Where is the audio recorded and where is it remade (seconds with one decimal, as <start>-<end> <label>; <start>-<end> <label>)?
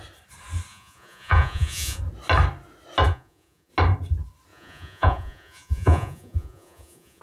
0.0-0.7 recorded; 0.7-2.0 remade; 2.0-3.1 recorded; 3.1-3.7 remade; 3.7-4.5 recorded; 4.5-7.2 remade